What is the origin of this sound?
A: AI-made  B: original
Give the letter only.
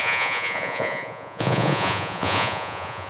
A